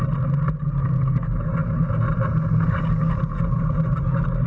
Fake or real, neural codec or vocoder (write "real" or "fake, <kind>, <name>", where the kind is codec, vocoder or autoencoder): real